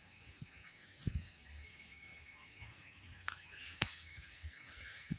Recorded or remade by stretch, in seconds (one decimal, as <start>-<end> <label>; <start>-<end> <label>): 0.0-5.2 remade